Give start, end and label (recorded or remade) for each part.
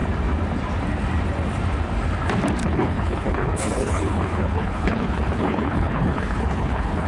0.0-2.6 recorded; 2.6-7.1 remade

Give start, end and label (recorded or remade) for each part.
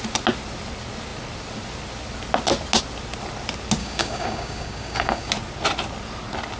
0.0-3.8 recorded; 3.8-5.3 remade; 5.3-6.6 recorded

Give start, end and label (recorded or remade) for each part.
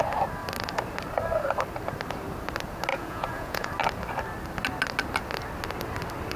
0.0-2.9 recorded; 2.9-3.7 remade; 3.7-6.4 recorded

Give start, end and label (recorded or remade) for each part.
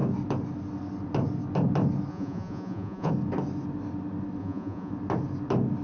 0.0-2.1 recorded; 2.1-3.1 remade; 3.1-4.4 recorded; 4.4-4.9 remade; 4.9-5.8 recorded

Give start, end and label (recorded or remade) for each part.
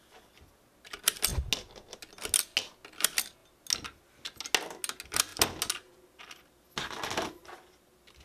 0.0-8.2 recorded